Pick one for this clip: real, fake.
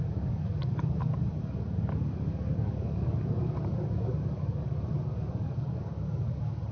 fake